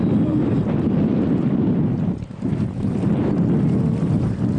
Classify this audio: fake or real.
real